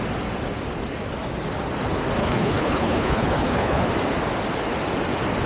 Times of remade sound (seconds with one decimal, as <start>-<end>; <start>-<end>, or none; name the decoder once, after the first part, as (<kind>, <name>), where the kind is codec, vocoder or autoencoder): 2.2-3.9 (codec, HILCodec)